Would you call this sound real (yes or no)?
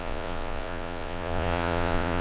no